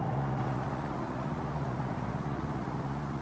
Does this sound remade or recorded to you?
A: remade